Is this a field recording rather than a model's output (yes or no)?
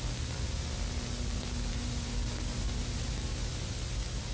yes